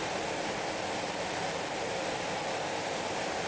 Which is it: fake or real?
real